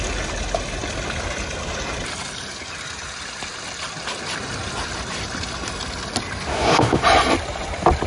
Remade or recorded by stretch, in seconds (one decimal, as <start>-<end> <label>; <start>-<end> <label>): 0.0-6.5 recorded; 6.5-7.0 remade; 7.0-8.1 recorded